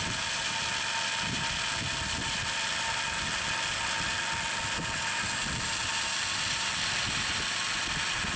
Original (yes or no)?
yes